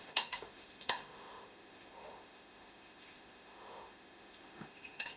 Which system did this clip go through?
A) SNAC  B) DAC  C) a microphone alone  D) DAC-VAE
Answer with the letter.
D